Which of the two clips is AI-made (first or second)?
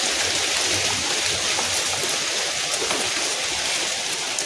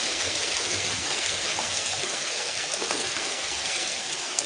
second